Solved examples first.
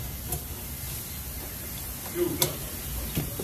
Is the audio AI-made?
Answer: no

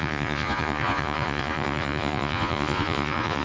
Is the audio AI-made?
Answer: yes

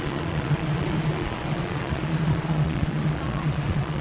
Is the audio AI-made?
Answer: yes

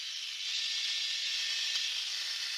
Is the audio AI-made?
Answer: no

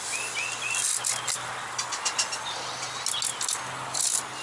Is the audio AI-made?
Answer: no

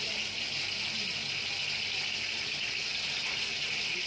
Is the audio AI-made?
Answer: no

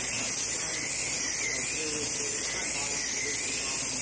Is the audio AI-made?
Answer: no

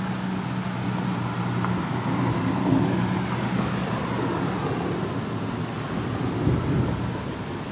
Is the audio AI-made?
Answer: no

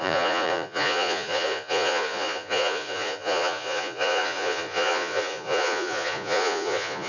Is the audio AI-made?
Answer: yes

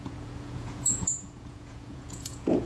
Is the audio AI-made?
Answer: yes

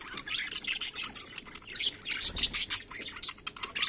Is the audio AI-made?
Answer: no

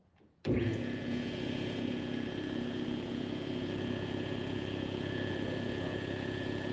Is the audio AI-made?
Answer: yes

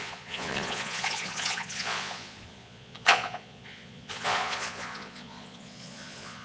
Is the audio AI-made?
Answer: yes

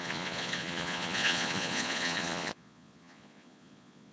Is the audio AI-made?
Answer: yes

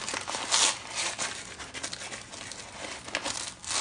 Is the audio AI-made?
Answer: no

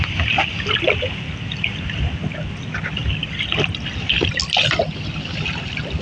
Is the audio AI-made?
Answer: no